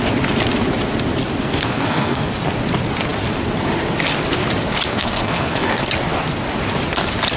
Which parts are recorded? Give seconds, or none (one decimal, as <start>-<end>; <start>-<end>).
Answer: 0.0-1.4; 2.3-4.9; 5.8-7.4